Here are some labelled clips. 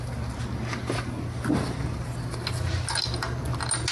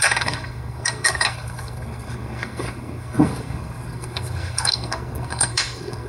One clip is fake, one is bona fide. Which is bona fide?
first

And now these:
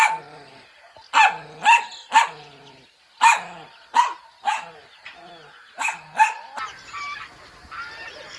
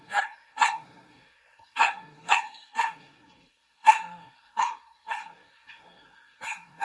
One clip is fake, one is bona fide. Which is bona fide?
first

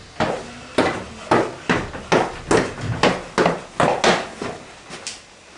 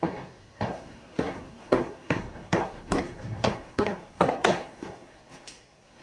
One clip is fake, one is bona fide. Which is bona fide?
first